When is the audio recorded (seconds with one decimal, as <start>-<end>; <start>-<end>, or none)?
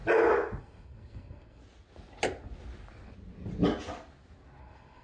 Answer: 0.0-0.6; 1.6-4.6